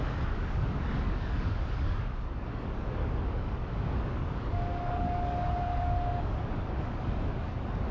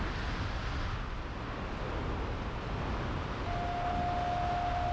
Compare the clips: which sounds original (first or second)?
second